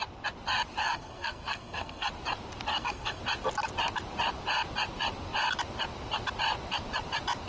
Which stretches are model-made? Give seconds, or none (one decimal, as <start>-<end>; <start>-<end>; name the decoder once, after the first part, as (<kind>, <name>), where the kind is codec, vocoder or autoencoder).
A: 0.8-2.1 (codec, SNAC); 2.7-3.2